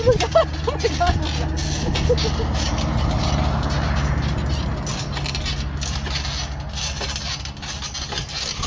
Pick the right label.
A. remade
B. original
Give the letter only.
B